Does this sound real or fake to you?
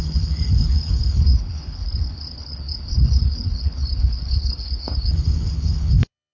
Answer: fake